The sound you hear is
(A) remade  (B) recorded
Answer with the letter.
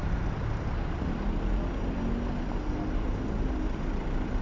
B